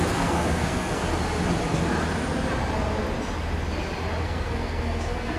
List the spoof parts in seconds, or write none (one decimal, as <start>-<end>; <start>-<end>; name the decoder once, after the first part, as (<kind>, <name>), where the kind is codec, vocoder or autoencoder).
0.0-1.1 (codec, SNAC); 4.2-5.4